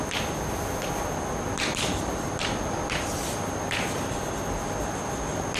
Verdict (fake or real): fake